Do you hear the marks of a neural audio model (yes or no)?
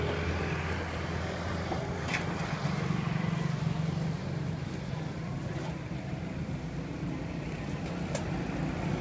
no